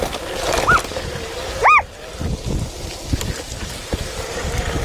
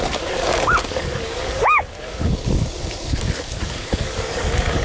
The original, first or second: first